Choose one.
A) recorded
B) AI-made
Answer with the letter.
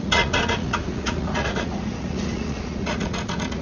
B